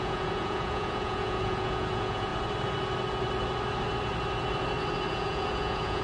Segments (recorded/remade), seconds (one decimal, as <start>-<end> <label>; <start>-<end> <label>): 0.0-2.3 remade; 2.3-5.1 recorded; 5.1-6.0 remade